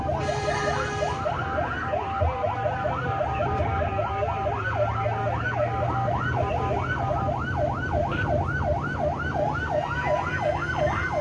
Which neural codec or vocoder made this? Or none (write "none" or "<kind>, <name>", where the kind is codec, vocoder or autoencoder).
none